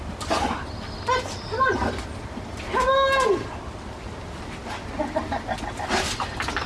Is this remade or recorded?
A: recorded